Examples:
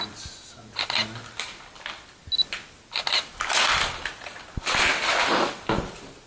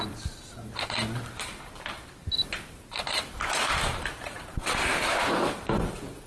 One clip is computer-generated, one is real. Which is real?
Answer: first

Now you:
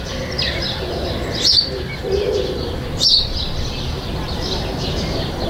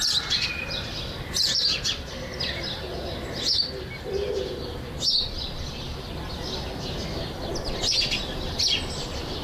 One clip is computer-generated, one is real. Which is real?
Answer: second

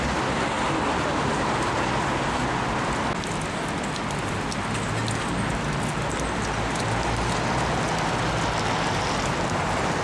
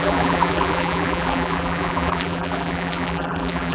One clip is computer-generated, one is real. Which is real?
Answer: first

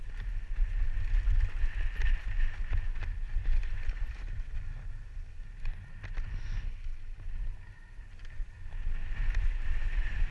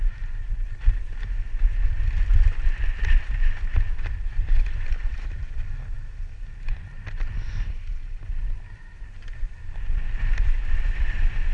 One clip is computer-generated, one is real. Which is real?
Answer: first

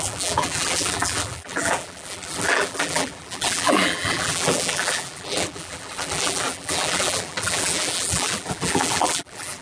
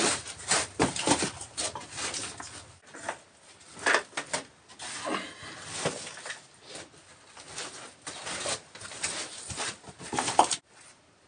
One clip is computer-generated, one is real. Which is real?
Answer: second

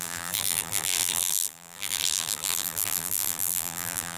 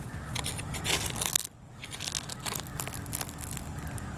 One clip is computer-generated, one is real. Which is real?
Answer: second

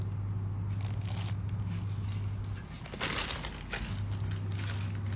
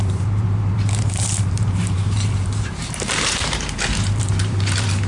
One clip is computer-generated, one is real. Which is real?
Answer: first